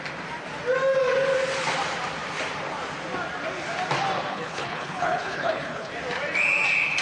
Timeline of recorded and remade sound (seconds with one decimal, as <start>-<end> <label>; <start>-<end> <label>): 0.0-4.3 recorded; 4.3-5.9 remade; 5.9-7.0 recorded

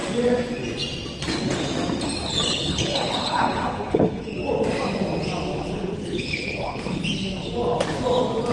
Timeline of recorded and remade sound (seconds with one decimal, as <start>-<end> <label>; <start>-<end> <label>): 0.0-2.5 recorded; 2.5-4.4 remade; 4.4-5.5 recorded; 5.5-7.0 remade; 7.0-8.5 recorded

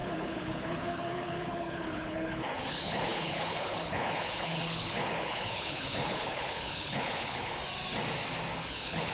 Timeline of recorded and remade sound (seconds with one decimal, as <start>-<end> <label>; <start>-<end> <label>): 0.0-7.5 remade; 7.5-8.6 recorded; 8.6-9.1 remade

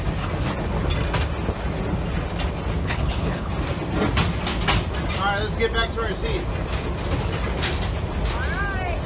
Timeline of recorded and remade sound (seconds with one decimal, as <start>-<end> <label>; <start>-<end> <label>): 0.0-2.8 recorded; 2.8-3.5 remade; 3.5-9.1 recorded

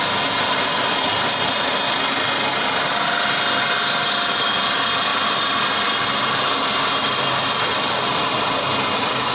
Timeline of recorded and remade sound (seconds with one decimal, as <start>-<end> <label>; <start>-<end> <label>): 0.0-9.3 recorded

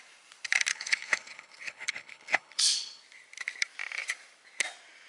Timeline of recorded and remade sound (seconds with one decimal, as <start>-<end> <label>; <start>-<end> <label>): 0.0-0.7 recorded; 0.7-3.0 remade; 3.0-5.1 recorded